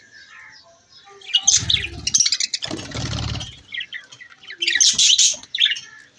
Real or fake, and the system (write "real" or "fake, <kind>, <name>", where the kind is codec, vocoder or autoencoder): real